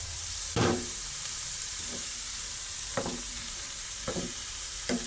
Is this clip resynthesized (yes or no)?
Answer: yes